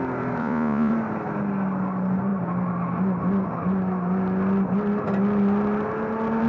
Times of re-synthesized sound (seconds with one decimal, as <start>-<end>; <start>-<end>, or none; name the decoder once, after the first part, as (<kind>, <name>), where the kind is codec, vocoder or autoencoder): 0.4-0.9 (vocoder, Vocos)